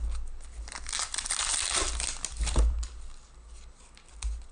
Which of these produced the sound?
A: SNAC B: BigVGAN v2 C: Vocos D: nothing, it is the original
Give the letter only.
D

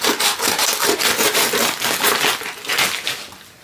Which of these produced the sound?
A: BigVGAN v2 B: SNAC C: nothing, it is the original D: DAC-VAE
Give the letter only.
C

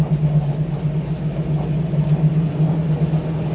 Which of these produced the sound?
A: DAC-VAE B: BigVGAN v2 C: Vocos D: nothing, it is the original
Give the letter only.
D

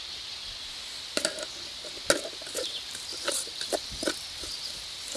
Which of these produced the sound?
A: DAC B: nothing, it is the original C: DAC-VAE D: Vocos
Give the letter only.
B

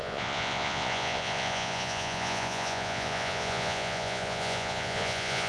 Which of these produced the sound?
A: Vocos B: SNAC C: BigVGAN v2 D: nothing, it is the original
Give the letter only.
A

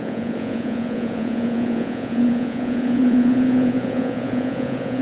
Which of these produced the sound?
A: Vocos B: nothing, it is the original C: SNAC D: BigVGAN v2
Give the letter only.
A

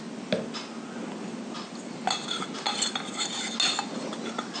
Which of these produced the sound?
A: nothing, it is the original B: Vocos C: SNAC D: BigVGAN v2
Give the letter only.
A